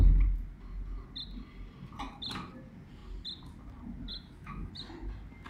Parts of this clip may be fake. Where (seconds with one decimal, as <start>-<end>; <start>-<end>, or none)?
4.1-4.7